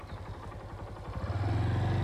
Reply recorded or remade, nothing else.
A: recorded